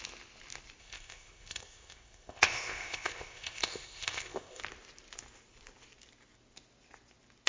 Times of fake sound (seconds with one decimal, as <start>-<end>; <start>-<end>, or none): 0.8-4.6